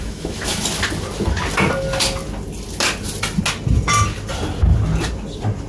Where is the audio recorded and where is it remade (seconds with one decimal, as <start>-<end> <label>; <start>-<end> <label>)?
0.0-0.6 remade; 0.6-5.7 recorded